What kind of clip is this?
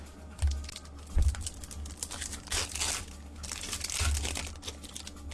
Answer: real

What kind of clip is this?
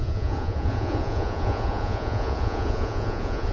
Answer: fake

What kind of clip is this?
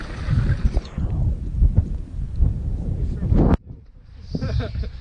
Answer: real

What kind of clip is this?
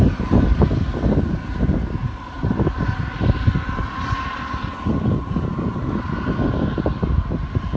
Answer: real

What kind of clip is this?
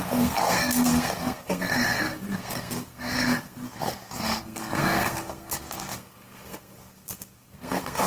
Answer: fake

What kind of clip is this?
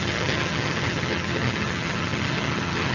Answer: fake